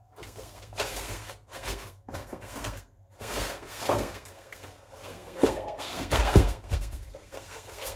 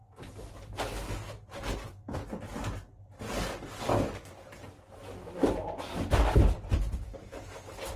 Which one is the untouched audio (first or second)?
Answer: second